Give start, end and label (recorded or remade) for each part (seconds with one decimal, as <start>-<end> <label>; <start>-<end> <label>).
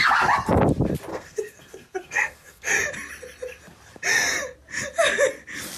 0.0-1.1 recorded; 1.1-2.7 remade; 2.7-5.8 recorded